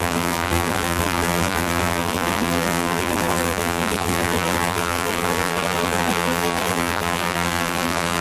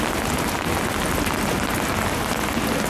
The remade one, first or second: first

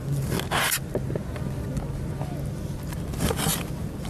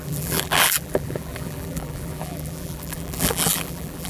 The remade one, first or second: second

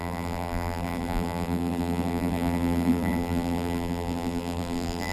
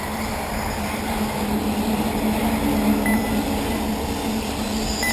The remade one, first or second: first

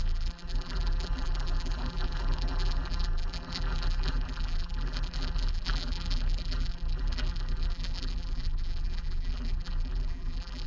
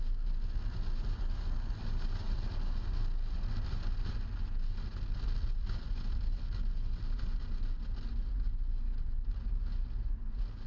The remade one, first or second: first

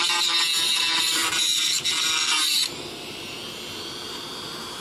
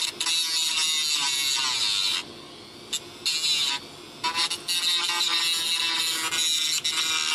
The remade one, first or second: first